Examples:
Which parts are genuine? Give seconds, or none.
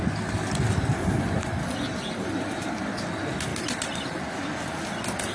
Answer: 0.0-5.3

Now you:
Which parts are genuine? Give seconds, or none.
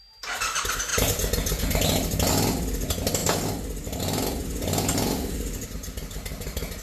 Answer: 0.0-6.8